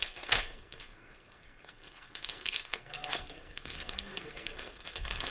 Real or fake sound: fake